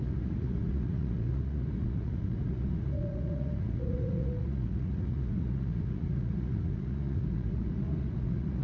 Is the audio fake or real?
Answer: fake